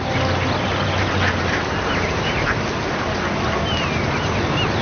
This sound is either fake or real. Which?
real